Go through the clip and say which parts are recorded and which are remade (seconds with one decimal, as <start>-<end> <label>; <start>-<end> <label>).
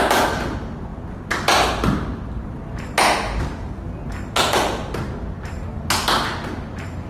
0.0-7.1 recorded